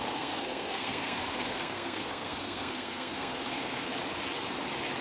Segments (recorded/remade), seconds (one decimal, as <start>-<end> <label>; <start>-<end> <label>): 0.0-3.9 remade; 3.9-5.0 recorded